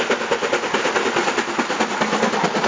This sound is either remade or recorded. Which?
recorded